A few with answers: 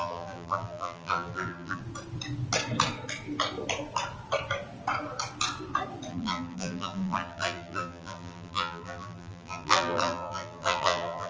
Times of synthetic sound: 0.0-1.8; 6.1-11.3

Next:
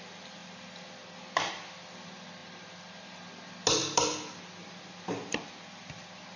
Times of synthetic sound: none

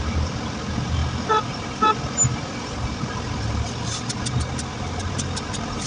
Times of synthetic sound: none

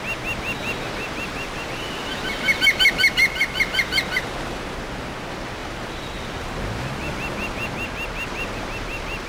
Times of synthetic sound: none

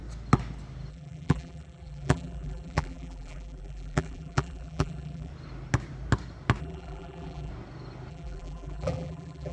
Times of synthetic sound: 0.9-5.3; 6.6-7.5; 8.1-9.5

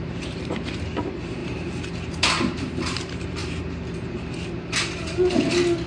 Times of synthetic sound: 0.0-3.4

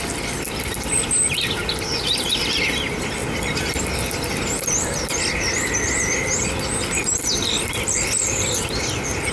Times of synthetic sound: none